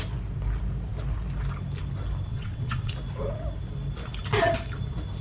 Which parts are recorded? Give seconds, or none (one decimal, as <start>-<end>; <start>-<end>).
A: 0.0-2.3; 2.9-5.2